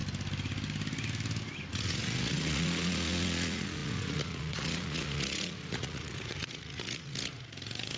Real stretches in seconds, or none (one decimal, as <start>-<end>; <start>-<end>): 0.0-1.7